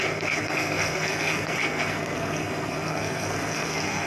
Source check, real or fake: fake